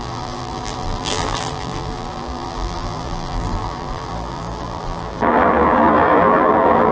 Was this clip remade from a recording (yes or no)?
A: yes